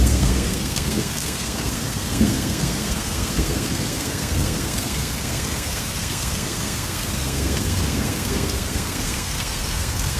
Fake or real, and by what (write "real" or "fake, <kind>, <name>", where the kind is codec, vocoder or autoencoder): fake, codec, SNAC